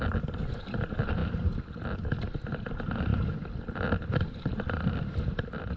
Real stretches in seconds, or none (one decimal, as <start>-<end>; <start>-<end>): 0.0-5.8